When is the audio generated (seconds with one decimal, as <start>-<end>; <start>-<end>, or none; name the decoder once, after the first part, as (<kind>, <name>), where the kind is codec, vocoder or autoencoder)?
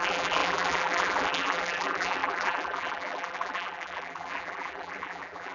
0.0-5.5 (vocoder, BigVGAN v2)